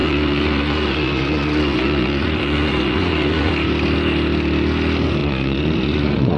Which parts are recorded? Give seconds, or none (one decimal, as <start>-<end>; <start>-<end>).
3.5-5.2